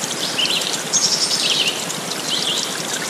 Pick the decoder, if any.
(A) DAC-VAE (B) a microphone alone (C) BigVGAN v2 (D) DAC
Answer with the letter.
C